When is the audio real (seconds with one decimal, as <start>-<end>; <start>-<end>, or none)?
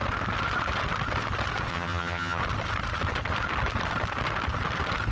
0.0-1.7; 2.4-5.1